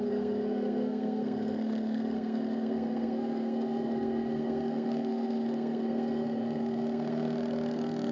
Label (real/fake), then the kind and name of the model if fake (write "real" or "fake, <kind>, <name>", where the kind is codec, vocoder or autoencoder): fake, codec, SNAC